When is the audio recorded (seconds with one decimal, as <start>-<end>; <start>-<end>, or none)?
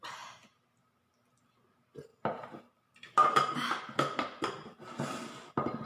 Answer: 0.0-5.9